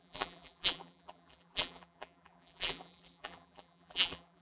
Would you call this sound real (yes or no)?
no